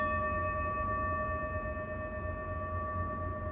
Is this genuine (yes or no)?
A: yes